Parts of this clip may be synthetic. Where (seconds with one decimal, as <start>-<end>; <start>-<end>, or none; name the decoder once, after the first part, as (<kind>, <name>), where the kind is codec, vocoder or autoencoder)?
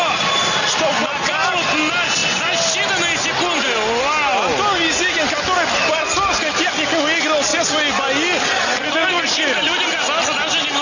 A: none